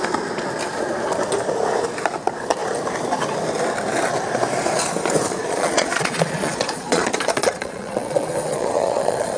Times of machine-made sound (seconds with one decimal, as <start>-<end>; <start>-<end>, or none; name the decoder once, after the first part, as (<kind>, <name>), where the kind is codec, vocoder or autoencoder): 5.4-9.4 (vocoder, Vocos)